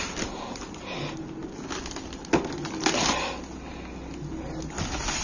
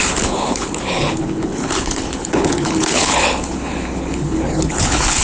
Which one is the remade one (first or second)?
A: second